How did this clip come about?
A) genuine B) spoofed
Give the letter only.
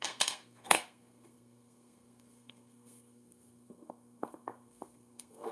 B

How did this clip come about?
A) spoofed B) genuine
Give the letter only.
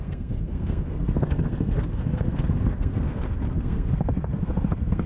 A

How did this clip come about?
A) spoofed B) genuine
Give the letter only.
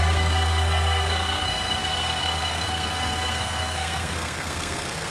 A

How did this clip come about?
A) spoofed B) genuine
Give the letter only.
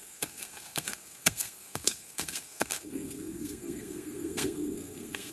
A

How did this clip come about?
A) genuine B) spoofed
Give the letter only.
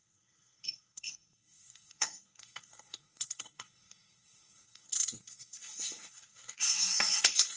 B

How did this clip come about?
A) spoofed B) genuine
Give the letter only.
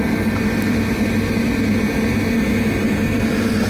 B